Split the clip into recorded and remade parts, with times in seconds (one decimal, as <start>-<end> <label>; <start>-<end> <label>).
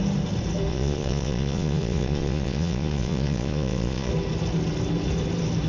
0.0-0.7 recorded; 0.7-4.1 remade; 4.1-5.7 recorded